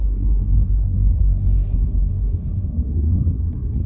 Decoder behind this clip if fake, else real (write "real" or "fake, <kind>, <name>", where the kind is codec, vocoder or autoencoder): fake, codec, SNAC